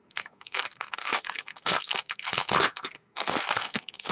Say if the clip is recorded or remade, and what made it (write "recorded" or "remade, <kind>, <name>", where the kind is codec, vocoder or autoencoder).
remade, codec, SNAC